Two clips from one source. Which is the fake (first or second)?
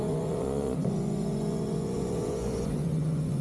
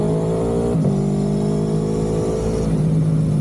first